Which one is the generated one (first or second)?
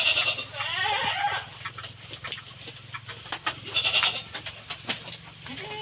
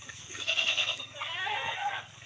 second